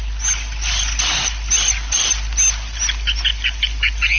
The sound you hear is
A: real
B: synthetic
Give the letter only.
A